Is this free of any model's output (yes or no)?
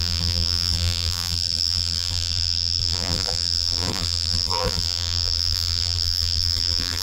no